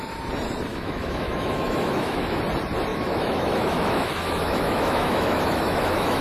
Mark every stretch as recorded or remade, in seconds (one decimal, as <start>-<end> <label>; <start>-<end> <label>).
0.0-0.7 recorded; 0.7-2.4 remade; 2.4-2.9 recorded; 2.9-6.2 remade